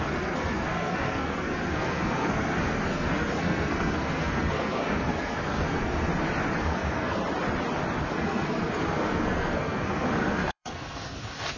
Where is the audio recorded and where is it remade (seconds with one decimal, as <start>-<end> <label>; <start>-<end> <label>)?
0.0-6.1 remade; 6.1-6.6 recorded; 6.6-7.2 remade; 7.2-8.1 recorded; 8.1-11.6 remade